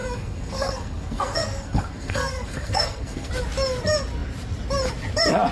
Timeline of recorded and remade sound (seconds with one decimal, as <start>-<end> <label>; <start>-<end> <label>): 0.0-3.3 remade; 3.3-5.5 recorded